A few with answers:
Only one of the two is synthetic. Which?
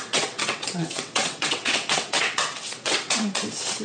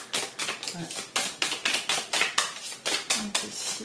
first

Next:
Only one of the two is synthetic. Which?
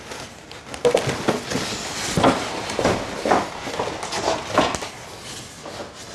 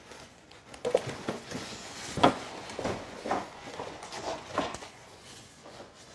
second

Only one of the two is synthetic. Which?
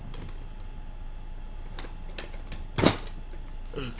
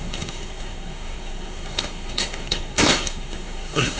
second